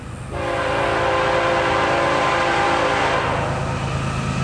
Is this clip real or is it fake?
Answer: real